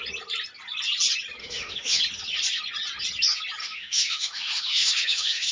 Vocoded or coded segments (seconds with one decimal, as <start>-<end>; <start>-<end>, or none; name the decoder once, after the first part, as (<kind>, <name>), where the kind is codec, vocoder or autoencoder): 1.4-2.0 (autoencoder, DAC-VAE); 3.6-5.5